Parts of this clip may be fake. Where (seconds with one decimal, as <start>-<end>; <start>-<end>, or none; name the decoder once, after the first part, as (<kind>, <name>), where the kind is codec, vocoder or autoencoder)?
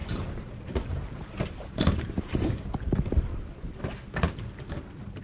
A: 0.0-3.3 (vocoder, BigVGAN v2)